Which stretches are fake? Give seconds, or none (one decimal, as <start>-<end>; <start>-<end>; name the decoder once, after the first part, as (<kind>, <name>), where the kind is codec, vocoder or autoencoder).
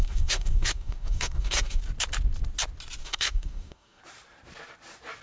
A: 0.0-1.8 (codec, DAC); 3.0-4.0